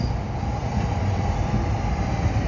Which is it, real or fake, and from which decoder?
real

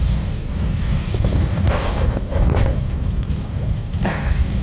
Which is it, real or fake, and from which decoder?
fake, codec, DAC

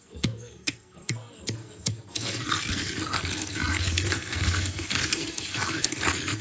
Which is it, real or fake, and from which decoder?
fake, codec, SNAC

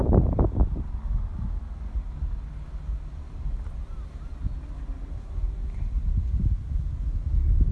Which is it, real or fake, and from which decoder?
real